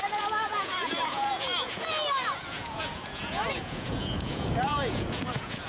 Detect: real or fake fake